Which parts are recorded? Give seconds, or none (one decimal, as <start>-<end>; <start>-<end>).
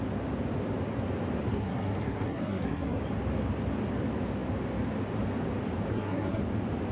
0.0-1.5; 3.0-5.9; 6.4-6.9